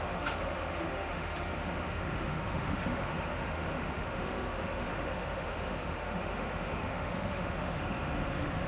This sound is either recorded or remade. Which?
remade